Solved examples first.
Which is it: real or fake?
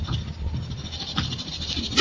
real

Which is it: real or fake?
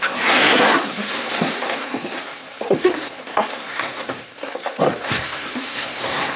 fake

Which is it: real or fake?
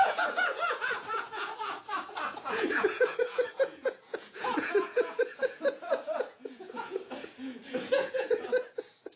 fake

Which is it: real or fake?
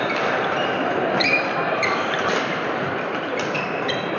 real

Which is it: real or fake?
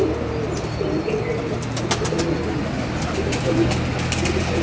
real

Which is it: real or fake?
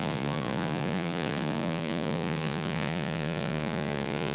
fake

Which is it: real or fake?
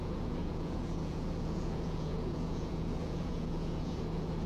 fake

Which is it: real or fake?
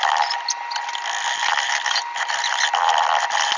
real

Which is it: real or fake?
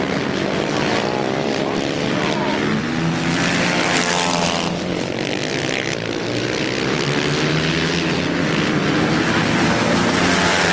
real